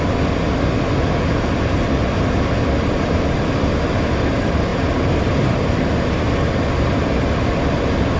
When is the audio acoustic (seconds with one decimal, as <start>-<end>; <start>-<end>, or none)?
0.0-4.7; 5.7-8.2

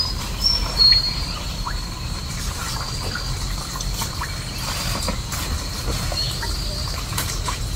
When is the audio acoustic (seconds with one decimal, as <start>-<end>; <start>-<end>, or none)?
2.6-5.9

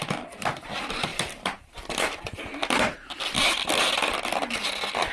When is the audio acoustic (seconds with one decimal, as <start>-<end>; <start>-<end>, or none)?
0.0-1.1; 4.2-5.1

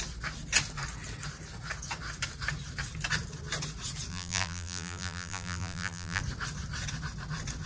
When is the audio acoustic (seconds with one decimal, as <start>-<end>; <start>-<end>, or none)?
0.0-4.1; 6.2-7.7

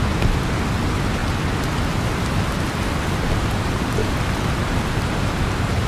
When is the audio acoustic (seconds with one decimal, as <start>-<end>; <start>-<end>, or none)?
1.2-3.4; 4.0-5.2

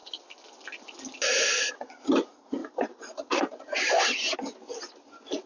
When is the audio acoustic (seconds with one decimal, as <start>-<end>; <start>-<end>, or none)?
0.0-2.6; 3.6-5.5

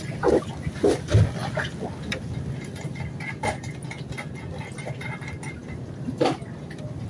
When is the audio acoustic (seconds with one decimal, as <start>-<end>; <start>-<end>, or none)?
0.0-7.1

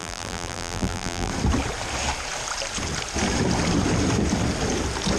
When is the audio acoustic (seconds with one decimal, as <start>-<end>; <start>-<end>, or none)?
1.3-5.2